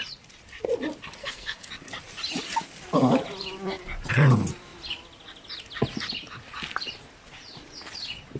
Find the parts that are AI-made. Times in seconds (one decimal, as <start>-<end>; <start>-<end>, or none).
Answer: 1.2-1.7